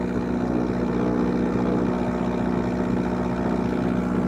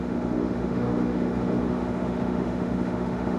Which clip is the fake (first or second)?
second